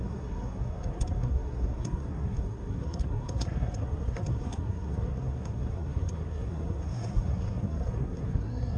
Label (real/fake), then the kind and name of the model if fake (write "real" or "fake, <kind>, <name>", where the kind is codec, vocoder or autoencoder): fake, codec, SNAC